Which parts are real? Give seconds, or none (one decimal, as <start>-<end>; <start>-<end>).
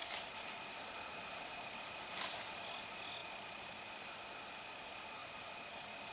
2.8-3.2; 3.9-5.2